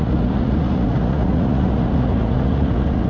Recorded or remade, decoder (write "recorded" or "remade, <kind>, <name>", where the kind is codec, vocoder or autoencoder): remade, vocoder, Vocos